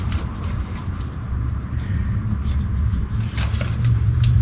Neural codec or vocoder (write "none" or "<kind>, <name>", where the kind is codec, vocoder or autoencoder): vocoder, BigVGAN v2